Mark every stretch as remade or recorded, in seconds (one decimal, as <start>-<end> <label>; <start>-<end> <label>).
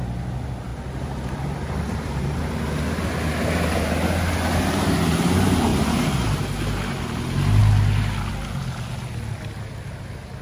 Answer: 0.0-0.7 recorded; 0.7-2.5 remade; 2.5-5.7 recorded; 5.7-6.4 remade; 6.4-10.4 recorded